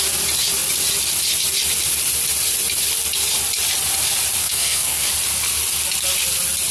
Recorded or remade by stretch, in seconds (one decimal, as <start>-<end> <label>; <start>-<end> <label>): 0.0-4.4 recorded; 4.4-5.1 remade; 5.1-6.7 recorded